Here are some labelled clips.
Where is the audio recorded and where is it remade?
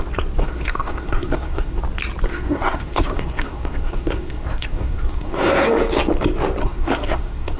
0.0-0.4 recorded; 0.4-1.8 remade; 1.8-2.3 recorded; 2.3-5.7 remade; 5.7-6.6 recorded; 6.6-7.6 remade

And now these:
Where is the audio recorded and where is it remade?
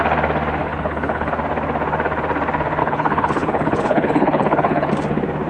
0.0-0.6 recorded; 0.6-1.3 remade; 1.3-2.8 recorded; 2.8-4.9 remade; 4.9-5.5 recorded